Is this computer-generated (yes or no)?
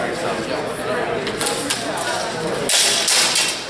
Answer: no